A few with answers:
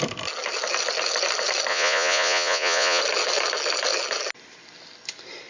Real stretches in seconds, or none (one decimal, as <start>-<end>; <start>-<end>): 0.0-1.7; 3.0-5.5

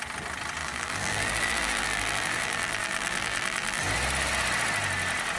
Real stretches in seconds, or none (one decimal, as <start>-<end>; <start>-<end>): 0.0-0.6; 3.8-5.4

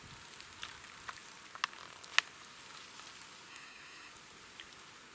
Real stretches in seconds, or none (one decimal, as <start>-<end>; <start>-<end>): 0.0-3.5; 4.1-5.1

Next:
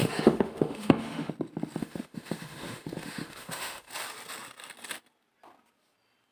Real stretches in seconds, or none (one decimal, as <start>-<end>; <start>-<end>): 1.3-1.8; 3.9-6.3

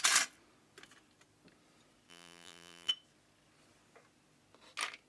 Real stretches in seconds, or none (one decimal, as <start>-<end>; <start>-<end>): 0.0-2.1; 2.9-5.1

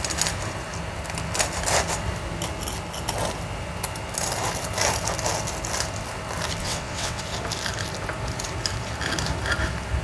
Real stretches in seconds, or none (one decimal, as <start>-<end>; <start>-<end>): 0.0-6.6; 7.2-10.0

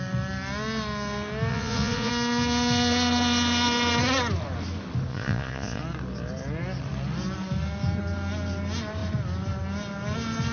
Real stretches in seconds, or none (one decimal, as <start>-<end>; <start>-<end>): 0.0-1.5; 2.1-5.1; 5.8-10.5

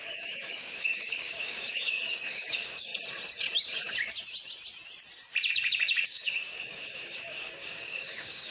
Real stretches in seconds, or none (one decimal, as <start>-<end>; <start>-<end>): 2.9-5.5